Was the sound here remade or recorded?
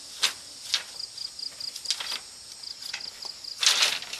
recorded